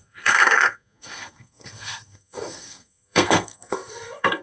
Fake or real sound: fake